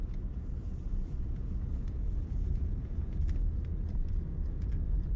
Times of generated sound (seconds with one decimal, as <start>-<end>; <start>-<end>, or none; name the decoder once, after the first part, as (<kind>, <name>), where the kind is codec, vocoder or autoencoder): 0.7-3.2 (vocoder, Vocos)